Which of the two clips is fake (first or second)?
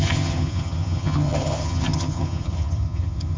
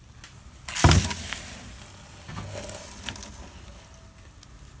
first